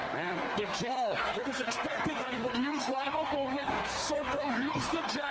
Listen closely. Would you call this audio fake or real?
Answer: fake